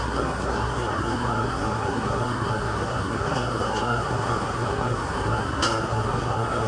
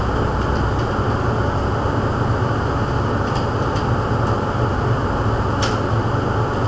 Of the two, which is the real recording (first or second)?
second